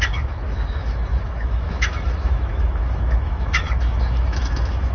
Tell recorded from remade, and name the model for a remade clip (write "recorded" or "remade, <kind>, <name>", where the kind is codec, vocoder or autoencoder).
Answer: remade, autoencoder, DAC-VAE